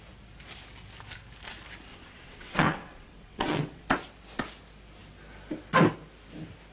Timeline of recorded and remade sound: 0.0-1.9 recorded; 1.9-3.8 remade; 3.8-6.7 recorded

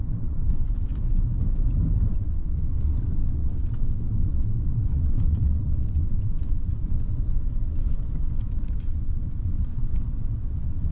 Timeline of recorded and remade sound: 0.0-0.9 remade; 0.9-2.1 recorded; 2.1-10.9 remade

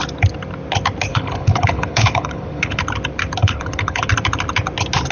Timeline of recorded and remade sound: 0.0-1.1 recorded; 1.1-2.8 remade; 2.8-3.4 recorded; 3.4-4.1 remade; 4.1-5.1 recorded

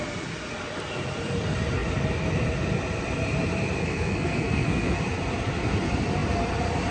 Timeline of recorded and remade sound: 0.0-3.8 recorded; 3.8-5.0 remade; 5.0-6.9 recorded